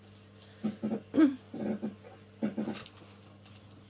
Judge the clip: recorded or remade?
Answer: recorded